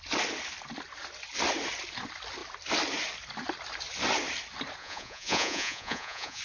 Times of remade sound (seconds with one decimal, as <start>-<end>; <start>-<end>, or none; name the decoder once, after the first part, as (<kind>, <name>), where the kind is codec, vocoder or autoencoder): 4.8-6.4 (vocoder, Vocos)